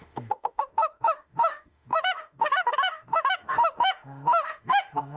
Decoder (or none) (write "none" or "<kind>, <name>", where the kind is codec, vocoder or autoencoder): autoencoder, DAC-VAE